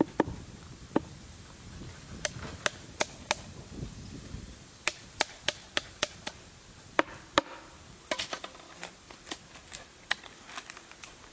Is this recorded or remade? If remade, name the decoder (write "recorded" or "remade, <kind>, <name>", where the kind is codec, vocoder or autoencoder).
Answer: recorded